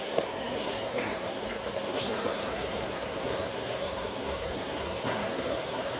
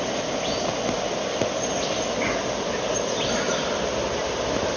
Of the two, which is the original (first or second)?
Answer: second